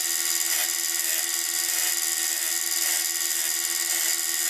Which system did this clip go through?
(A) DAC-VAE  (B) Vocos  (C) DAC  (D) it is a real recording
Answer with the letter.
D